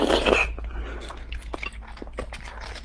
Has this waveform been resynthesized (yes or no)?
no